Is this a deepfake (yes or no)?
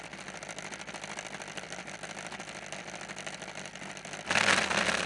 no